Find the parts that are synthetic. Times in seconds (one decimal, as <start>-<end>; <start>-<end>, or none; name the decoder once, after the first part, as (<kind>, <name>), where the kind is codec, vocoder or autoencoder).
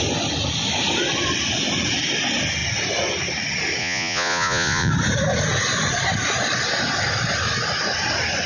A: 3.8-4.9 (vocoder, Vocos)